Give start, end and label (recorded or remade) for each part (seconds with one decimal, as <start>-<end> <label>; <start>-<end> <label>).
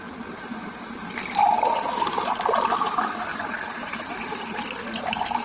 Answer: 0.0-3.3 recorded; 3.3-4.4 remade; 4.4-5.4 recorded